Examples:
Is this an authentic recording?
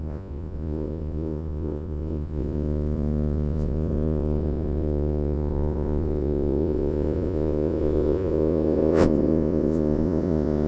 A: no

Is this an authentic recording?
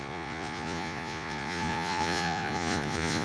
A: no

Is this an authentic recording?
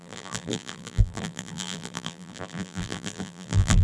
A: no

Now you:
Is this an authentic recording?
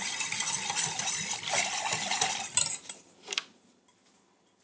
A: yes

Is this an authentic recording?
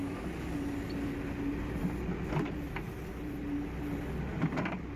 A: yes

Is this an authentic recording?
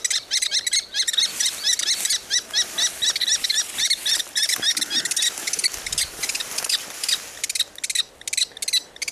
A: yes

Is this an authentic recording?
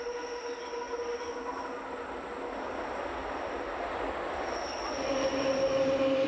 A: yes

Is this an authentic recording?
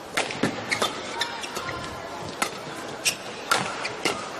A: yes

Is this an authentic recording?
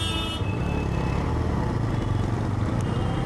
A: yes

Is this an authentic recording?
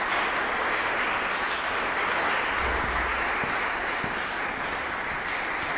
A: yes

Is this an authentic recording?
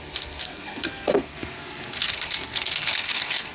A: no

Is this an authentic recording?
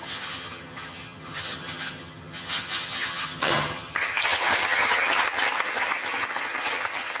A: no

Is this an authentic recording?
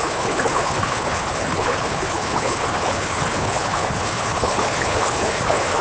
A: no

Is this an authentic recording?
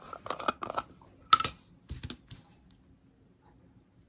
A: yes